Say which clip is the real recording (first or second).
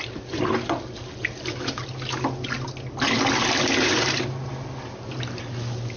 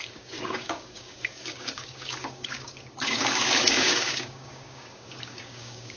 first